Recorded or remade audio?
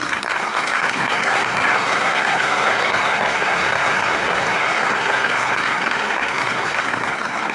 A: remade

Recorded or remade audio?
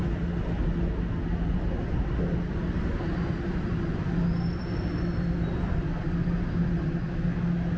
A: recorded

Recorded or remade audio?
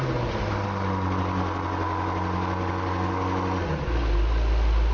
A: recorded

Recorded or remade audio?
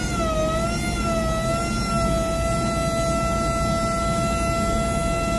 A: recorded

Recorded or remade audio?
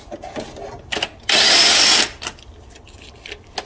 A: recorded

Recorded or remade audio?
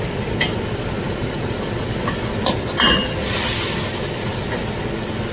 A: recorded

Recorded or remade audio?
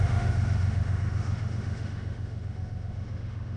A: remade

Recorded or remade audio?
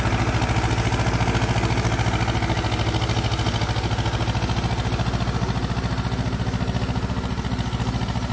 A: recorded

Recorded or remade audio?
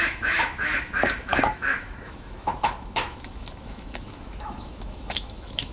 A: remade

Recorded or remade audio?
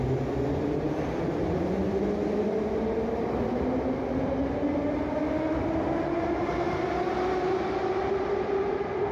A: recorded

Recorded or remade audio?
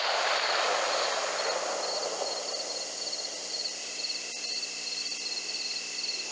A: remade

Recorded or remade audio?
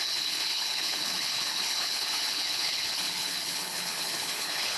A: remade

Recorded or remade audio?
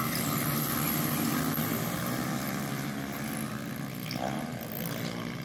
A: recorded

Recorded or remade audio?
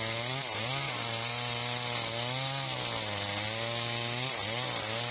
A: recorded